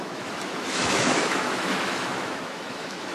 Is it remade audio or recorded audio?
remade